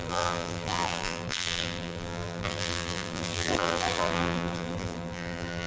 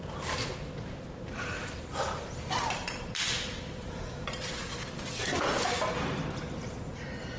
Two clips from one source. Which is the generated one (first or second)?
first